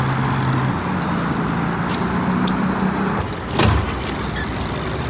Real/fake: real